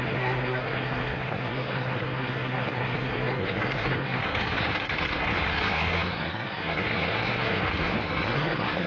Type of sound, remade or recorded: remade